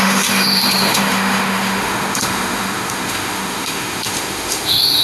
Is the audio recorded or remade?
remade